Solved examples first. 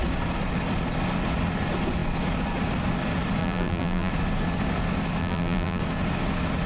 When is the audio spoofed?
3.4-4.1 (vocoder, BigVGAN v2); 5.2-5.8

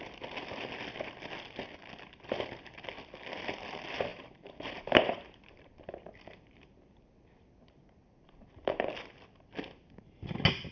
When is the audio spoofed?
4.1-5.9 (vocoder, BigVGAN v2); 8.0-8.9

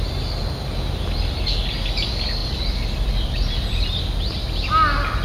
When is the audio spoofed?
2.4-4.0 (vocoder, BigVGAN v2)

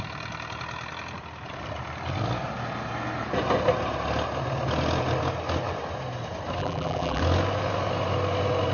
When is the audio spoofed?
6.6-7.2 (vocoder, BigVGAN v2)

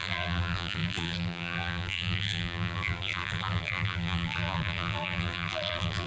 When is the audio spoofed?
0.0-6.1 (vocoder, BigVGAN v2)